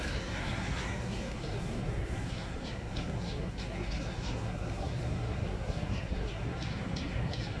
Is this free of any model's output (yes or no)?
no